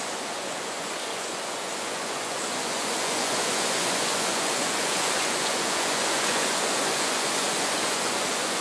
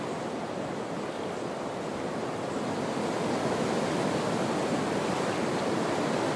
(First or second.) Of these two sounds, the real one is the second